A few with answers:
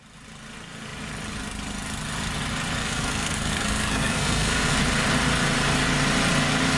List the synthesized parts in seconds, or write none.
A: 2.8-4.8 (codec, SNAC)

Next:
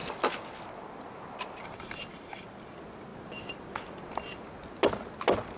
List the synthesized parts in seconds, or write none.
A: none